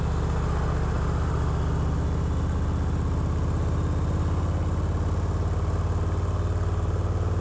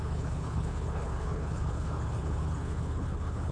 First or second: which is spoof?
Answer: second